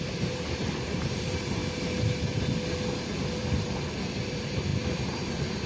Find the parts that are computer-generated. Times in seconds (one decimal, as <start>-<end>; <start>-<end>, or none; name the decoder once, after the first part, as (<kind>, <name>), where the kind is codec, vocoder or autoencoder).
0.0-1.6 (vocoder, BigVGAN v2); 4.3-4.7; 5.3-5.7